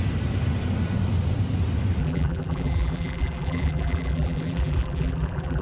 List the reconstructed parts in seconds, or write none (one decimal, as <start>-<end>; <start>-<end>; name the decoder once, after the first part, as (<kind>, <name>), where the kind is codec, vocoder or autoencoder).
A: 2.0-5.6 (vocoder, BigVGAN v2)